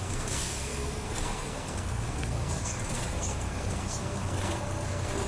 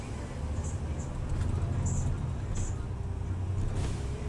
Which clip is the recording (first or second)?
second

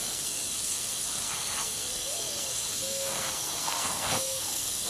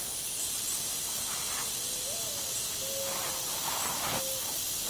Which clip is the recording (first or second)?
second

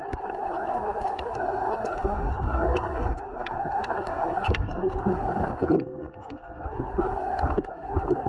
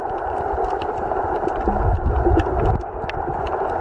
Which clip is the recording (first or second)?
second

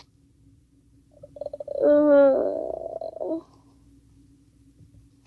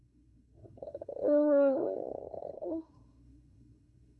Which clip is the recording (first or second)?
first